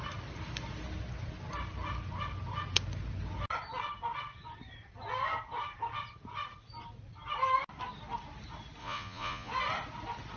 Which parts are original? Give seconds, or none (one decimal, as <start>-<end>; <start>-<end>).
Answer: 0.0-8.8; 9.5-10.4